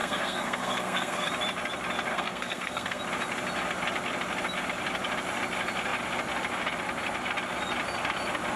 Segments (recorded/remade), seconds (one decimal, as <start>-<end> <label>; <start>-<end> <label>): 0.0-1.3 remade; 1.3-2.1 recorded; 2.1-3.0 remade; 3.0-8.6 recorded